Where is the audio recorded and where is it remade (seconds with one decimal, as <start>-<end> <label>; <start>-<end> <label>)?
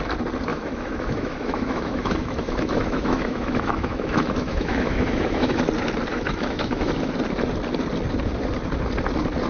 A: 0.0-0.5 recorded; 0.5-5.6 remade; 5.6-6.1 recorded; 6.1-6.9 remade; 6.9-9.5 recorded